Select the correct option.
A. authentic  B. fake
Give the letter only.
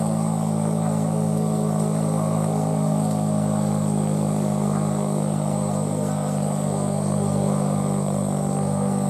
B